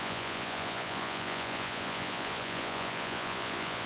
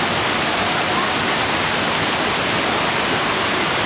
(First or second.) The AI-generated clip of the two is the first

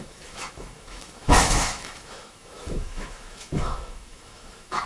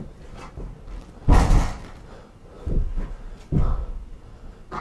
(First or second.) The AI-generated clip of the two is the first